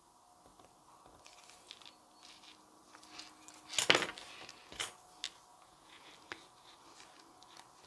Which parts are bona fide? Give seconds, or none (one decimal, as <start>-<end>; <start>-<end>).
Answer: 0.0-5.5; 6.1-7.9